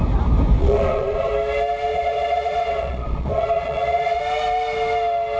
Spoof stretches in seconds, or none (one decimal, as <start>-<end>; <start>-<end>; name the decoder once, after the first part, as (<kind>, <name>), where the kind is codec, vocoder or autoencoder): 0.6-1.3 (vocoder, Vocos); 1.9-4.2